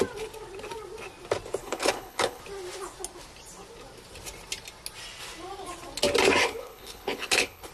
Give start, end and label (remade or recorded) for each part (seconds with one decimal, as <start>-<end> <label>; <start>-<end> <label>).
0.0-1.6 recorded; 1.6-2.4 remade; 2.4-6.4 recorded; 6.4-7.7 remade